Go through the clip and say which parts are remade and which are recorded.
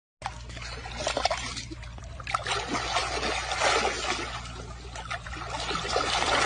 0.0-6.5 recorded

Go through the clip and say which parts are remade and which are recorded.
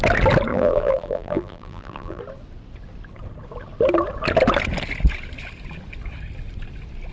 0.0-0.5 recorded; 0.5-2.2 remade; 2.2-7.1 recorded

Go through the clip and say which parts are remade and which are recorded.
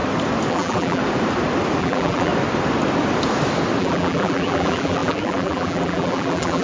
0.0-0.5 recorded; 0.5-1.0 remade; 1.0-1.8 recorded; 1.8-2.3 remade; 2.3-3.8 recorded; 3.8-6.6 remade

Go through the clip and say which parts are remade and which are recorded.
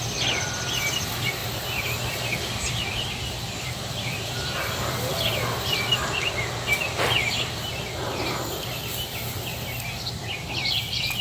0.0-1.4 remade; 1.4-2.7 recorded; 2.7-9.5 remade; 9.5-10.1 recorded; 10.1-11.2 remade